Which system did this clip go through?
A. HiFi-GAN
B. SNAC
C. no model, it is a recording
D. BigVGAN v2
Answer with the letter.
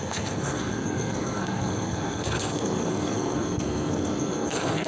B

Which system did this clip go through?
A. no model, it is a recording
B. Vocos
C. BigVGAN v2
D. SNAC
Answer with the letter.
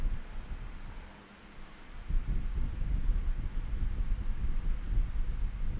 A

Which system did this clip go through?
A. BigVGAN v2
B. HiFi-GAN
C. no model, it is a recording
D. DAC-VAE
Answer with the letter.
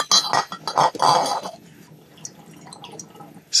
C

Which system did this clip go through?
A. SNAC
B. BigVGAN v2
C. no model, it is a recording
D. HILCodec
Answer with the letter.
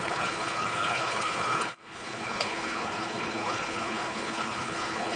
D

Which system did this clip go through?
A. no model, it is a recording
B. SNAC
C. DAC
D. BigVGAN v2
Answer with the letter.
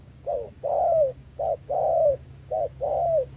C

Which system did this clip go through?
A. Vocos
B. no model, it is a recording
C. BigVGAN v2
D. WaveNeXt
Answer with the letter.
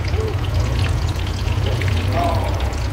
A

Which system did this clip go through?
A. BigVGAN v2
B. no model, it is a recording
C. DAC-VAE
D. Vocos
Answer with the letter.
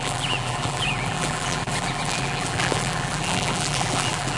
A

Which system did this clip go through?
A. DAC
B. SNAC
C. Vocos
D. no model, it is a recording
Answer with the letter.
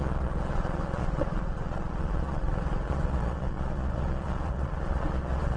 C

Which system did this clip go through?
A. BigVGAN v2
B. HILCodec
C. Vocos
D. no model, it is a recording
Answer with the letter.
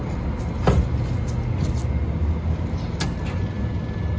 D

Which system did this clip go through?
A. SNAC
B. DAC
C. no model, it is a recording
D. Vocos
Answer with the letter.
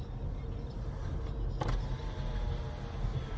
C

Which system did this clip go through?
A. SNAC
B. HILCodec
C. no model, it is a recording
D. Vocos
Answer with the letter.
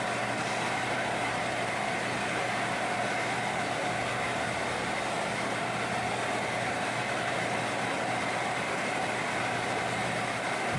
C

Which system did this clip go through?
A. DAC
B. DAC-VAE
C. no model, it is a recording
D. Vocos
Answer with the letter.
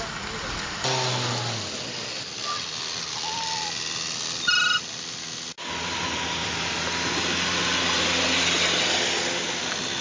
C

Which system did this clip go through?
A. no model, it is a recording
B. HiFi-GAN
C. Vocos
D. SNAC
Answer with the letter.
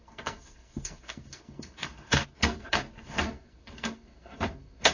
D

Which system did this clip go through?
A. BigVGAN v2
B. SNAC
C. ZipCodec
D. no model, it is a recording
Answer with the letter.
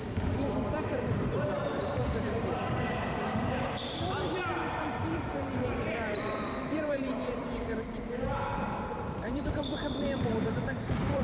A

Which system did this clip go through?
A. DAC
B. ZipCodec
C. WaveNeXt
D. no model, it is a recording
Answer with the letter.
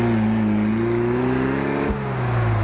D